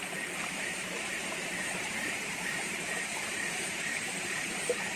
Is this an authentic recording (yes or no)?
no